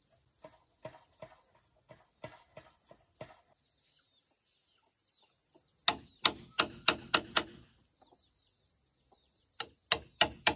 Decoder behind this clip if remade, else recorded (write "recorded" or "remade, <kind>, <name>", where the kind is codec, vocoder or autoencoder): recorded